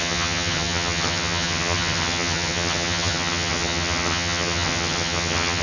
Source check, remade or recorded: remade